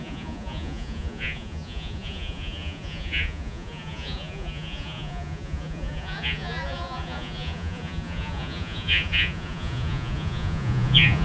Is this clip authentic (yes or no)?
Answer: no